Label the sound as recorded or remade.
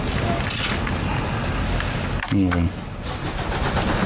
recorded